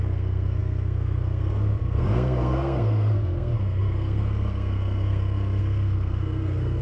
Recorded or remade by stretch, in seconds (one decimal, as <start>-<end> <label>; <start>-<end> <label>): 0.0-6.8 remade